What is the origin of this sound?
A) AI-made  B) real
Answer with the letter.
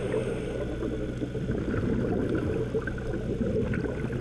B